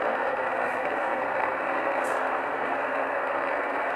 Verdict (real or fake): fake